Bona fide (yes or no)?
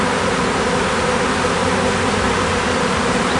yes